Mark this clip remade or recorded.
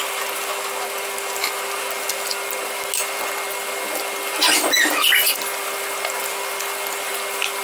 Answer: recorded